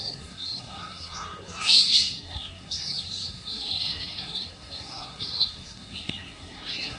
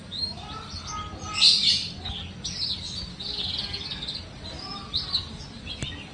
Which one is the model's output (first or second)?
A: first